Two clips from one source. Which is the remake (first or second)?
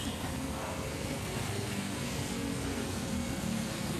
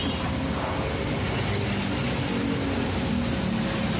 first